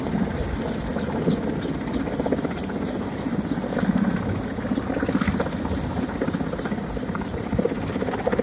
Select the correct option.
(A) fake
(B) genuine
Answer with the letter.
B